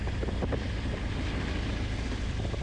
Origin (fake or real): real